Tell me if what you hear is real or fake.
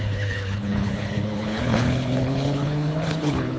fake